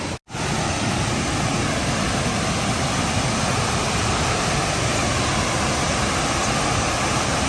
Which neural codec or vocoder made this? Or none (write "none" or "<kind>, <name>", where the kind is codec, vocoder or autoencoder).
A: none